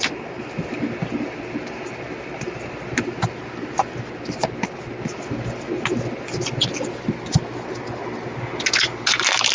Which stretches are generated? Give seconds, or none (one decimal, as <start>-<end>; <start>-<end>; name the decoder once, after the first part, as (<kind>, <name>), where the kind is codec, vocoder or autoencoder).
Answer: none